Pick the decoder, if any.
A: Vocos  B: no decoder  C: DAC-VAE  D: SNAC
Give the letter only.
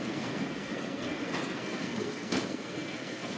D